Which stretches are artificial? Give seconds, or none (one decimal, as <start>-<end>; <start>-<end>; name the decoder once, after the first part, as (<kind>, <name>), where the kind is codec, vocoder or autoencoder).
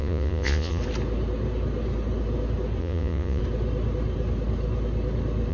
0.0-0.8 (vocoder, Vocos); 2.8-3.4